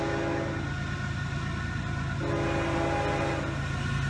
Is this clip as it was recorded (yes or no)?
yes